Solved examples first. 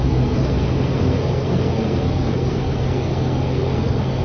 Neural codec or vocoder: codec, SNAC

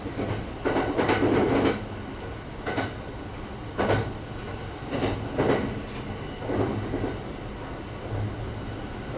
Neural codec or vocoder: none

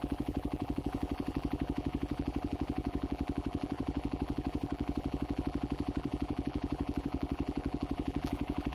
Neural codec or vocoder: vocoder, BigVGAN v2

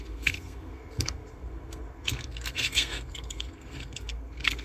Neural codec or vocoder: codec, SNAC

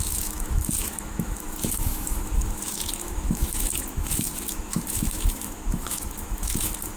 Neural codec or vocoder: autoencoder, DAC-VAE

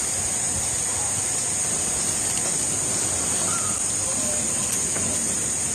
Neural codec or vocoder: none